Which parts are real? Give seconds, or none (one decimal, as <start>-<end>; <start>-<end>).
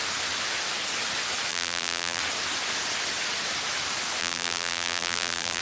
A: 0.0-1.5; 2.2-4.2